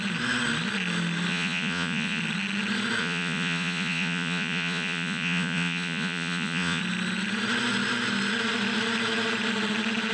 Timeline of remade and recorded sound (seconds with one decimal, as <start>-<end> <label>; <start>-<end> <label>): 0.0-1.3 recorded; 1.3-2.2 remade; 2.2-3.0 recorded; 3.0-6.8 remade; 6.8-10.1 recorded